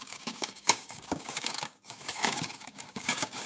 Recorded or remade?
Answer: remade